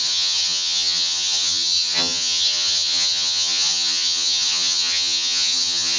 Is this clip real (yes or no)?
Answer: no